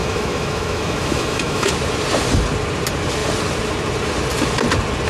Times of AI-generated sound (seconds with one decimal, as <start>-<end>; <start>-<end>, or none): 0.0-1.7